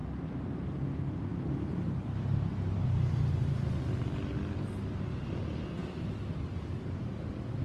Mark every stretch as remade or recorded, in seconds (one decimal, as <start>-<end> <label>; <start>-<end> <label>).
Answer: 0.0-5.8 recorded; 5.8-7.6 remade